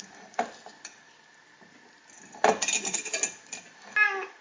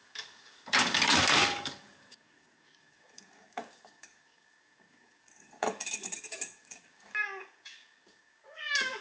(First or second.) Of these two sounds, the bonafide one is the first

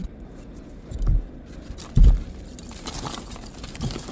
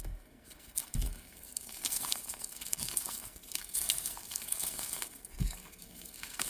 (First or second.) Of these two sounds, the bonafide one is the first